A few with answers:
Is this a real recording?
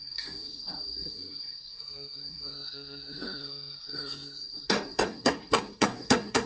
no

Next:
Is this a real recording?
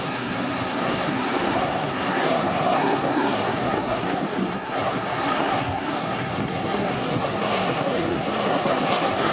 no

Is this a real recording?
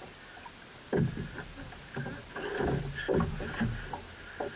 yes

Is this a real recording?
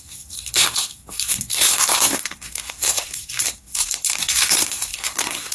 no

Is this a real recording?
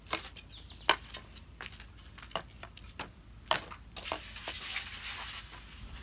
yes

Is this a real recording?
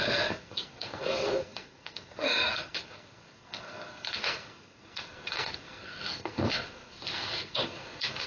no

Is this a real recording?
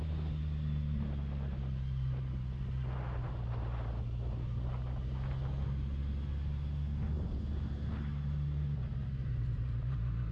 yes